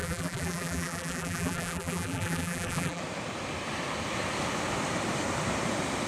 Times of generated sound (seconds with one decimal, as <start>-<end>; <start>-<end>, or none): 0.0-3.0